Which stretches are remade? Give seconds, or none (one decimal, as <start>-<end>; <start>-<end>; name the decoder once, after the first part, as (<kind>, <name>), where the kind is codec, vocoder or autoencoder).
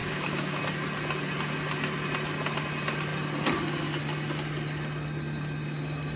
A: 0.0-0.6 (codec, DAC)